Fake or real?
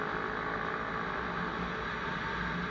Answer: real